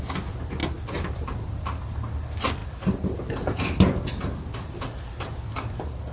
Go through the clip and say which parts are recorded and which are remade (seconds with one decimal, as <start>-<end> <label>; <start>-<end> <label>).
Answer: 0.0-6.1 recorded